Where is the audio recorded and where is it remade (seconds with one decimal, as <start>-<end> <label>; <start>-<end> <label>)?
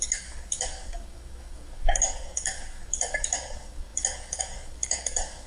0.0-5.5 remade